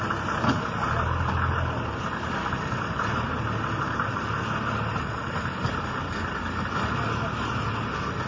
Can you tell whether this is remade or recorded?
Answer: recorded